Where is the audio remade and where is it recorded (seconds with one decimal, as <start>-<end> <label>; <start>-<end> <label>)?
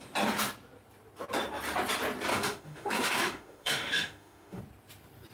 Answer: 0.0-2.3 recorded; 2.3-4.6 remade; 4.6-5.3 recorded